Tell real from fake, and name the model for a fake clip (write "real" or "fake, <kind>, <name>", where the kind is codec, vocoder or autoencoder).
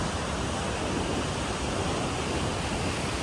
real